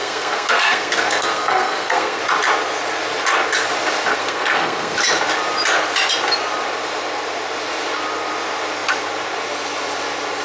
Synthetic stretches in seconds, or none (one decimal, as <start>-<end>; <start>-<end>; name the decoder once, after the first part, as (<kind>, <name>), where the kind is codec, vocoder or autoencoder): 0.0-2.2 (codec, SNAC); 4.1-5.0